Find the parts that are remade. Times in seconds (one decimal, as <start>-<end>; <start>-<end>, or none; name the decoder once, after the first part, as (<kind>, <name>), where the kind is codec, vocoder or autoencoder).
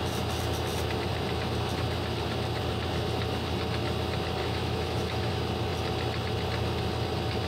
4.4-5.3 (autoencoder, DAC-VAE)